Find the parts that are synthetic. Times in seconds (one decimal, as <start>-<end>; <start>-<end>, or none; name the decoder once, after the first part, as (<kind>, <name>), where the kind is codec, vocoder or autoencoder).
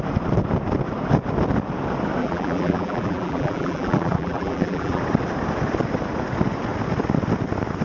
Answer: 2.2-5.0 (vocoder, BigVGAN v2)